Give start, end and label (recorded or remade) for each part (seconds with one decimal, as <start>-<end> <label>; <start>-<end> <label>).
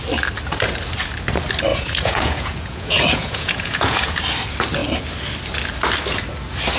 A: 0.0-1.7 recorded; 1.7-4.2 remade; 4.2-6.8 recorded